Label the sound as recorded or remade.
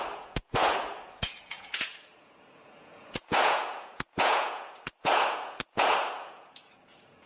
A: remade